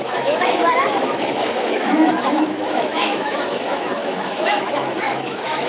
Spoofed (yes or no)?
yes